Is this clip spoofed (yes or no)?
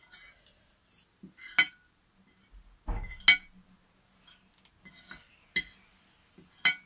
no